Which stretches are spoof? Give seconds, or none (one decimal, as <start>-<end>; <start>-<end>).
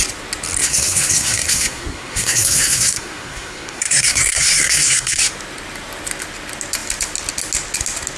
0.6-5.3